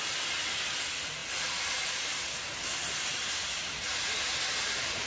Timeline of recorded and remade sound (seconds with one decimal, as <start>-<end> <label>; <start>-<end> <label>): 0.0-5.1 recorded